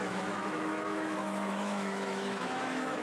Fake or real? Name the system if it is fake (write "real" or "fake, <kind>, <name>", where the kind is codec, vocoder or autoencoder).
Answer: fake, autoencoder, DAC-VAE